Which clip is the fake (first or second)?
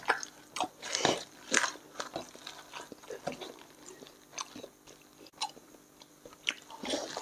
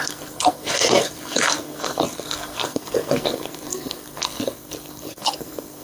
second